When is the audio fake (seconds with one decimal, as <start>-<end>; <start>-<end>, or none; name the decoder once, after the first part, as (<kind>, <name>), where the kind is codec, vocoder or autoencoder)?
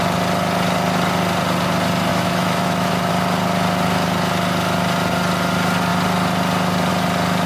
2.1-3.1 (autoencoder, DAC-VAE)